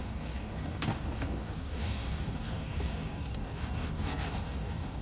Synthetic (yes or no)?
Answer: yes